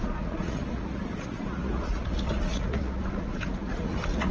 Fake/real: fake